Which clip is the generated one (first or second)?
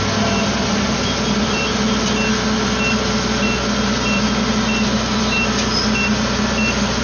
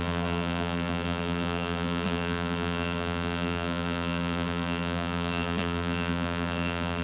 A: second